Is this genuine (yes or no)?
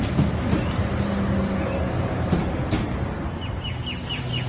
yes